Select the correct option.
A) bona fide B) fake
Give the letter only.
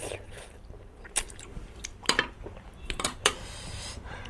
B